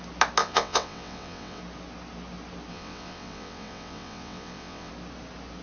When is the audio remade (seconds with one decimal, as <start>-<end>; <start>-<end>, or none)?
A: 0.4-1.6; 2.7-4.9